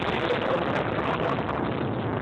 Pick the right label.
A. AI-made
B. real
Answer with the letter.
B